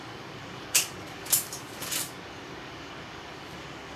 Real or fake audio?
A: fake